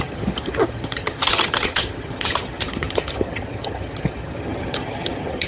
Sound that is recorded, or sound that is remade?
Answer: remade